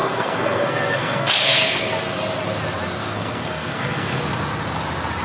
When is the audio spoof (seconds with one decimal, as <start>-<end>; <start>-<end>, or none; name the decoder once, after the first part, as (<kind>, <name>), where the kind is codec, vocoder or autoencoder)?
0.0-1.9 (codec, SNAC); 3.0-4.2